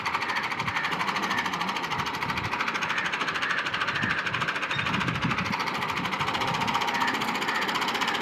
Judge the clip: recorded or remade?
recorded